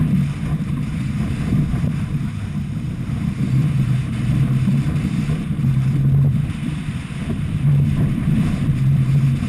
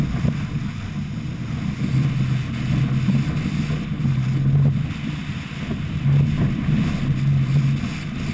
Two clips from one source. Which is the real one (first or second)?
second